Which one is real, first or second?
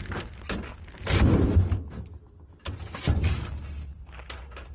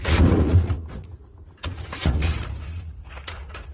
first